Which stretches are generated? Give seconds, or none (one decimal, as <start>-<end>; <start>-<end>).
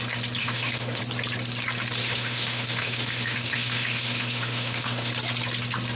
0.4-1.0; 2.0-5.1